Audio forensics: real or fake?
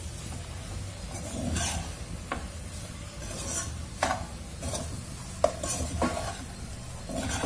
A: real